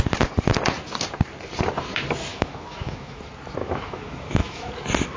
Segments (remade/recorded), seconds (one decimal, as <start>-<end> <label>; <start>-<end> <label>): 0.0-2.3 recorded; 2.3-3.2 remade; 3.2-3.6 recorded; 3.6-4.7 remade; 4.7-5.2 recorded